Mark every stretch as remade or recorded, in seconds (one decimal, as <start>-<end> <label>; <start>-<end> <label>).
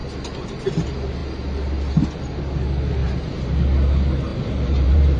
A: 0.0-3.0 recorded; 3.0-3.5 remade; 3.5-4.3 recorded; 4.3-5.2 remade